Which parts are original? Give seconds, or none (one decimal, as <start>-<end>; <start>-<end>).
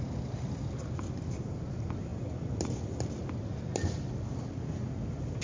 0.0-5.4